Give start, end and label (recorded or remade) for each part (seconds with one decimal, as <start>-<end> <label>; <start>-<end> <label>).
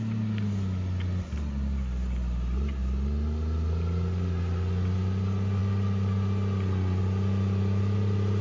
0.0-8.4 recorded